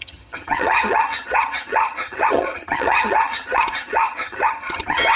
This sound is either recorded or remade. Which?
remade